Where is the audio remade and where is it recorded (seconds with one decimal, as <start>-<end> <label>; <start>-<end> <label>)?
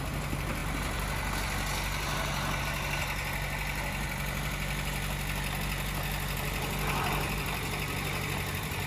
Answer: 0.0-8.9 recorded